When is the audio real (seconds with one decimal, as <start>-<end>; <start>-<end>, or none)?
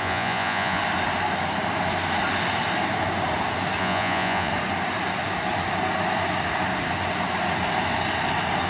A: 0.8-3.8; 4.5-8.7